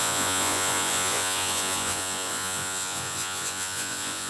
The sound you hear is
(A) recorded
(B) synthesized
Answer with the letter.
B